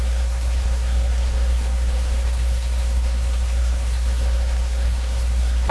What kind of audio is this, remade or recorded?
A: remade